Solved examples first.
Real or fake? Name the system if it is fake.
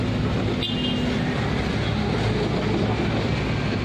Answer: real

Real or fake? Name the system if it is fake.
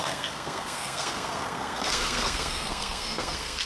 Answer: fake, codec, SNAC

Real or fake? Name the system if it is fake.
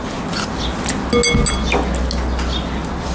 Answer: real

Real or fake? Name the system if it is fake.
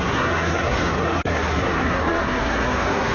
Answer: fake, codec, SNAC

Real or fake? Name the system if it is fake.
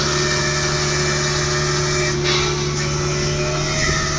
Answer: real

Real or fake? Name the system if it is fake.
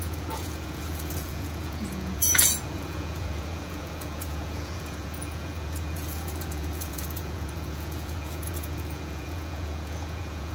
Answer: fake, vocoder, Vocos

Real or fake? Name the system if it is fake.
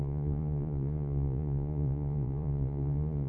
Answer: fake, vocoder, Vocos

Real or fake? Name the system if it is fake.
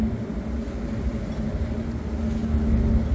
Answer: real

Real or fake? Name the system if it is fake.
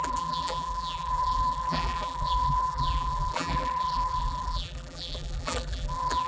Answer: fake, vocoder, BigVGAN v2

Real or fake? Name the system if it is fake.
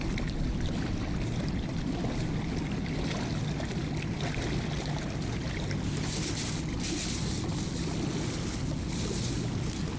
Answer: real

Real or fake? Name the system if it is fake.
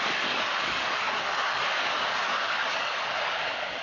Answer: fake, codec, DAC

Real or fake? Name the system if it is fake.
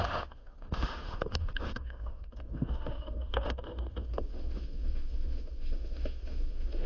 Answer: fake, autoencoder, DAC-VAE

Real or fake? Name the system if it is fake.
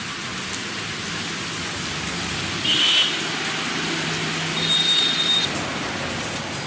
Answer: real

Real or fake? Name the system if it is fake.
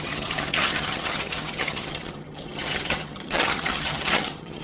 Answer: fake, vocoder, HiFi-GAN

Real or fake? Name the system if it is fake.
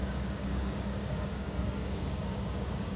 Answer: fake, codec, DAC